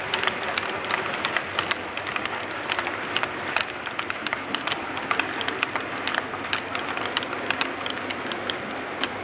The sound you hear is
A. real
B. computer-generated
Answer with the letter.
A